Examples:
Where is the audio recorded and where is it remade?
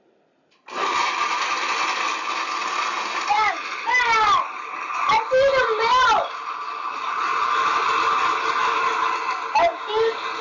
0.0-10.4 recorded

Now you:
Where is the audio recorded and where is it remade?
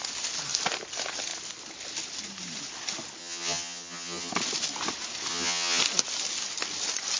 0.0-3.2 recorded; 3.2-4.3 remade; 4.3-5.3 recorded; 5.3-5.8 remade; 5.8-7.2 recorded